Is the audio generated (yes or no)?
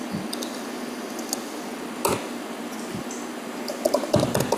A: no